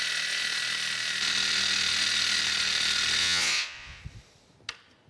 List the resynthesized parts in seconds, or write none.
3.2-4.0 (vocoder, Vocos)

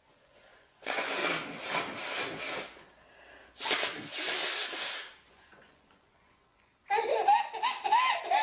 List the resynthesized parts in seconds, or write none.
0.0-1.2 (vocoder, Vocos); 5.3-6.7

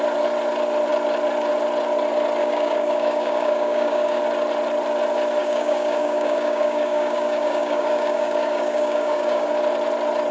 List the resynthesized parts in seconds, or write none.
2.4-4.2 (codec, DAC); 5.4-9.5

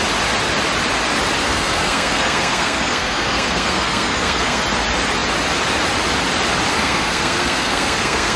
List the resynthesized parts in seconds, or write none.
1.4-4.6 (codec, SNAC); 6.7-8.4